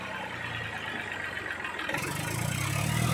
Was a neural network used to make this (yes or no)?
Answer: no